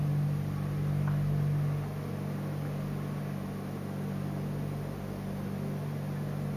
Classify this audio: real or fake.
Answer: real